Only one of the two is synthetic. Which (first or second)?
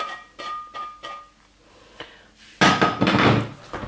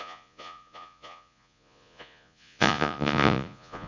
second